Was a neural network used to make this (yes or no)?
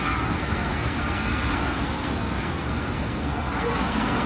yes